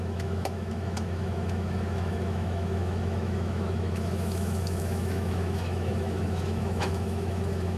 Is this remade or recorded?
remade